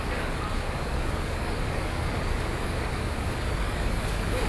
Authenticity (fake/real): fake